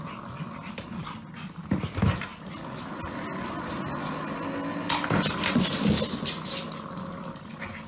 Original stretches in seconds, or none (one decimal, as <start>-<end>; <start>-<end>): 0.0-7.9